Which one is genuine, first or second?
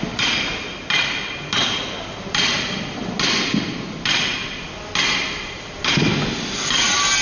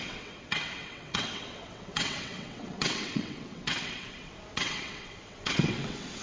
first